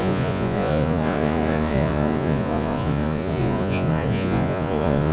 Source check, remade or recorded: remade